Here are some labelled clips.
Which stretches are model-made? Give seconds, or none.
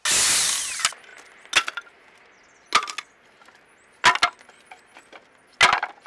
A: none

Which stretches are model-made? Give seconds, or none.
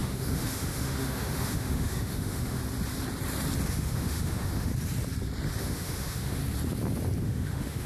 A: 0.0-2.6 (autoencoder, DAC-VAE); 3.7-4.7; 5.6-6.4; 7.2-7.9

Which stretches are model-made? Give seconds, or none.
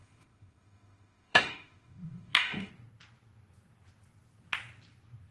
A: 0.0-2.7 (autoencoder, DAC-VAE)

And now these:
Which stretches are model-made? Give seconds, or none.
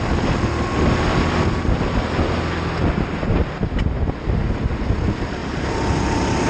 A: none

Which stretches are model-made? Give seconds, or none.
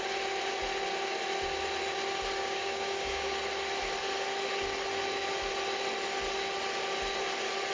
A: 2.4-3.2 (codec, DAC)